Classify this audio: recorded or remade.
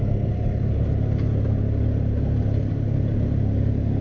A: recorded